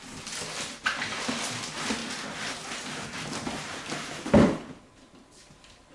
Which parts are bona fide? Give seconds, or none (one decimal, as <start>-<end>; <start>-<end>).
0.0-5.9